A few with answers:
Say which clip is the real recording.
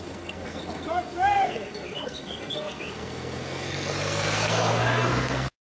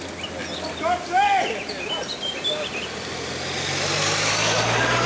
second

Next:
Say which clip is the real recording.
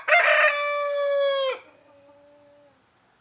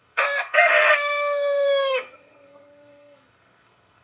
first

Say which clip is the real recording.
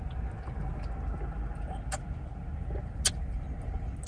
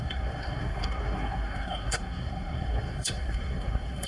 first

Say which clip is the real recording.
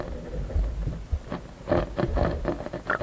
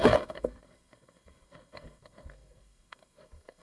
first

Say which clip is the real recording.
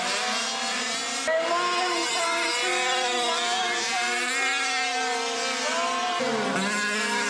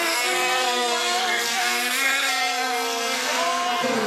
first